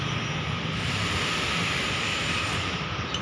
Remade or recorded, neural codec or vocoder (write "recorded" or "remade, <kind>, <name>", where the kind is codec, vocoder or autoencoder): recorded